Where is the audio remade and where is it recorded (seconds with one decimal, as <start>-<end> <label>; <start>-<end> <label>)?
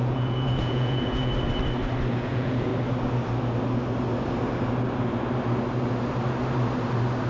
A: 0.0-1.3 remade; 1.3-2.1 recorded; 2.1-2.7 remade; 2.7-7.3 recorded